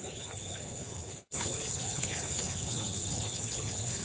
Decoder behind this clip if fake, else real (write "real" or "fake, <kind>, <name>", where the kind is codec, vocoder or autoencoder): fake, codec, HILCodec